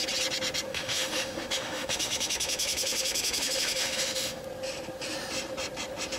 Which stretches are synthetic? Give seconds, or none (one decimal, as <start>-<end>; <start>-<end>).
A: 0.7-4.4